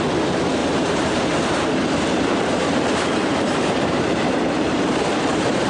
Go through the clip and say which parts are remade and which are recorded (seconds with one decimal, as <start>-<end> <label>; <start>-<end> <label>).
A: 0.0-0.6 recorded; 0.6-1.2 remade; 1.2-2.3 recorded; 2.3-5.7 remade